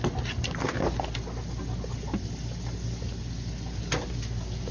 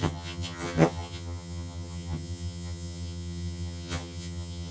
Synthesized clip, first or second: second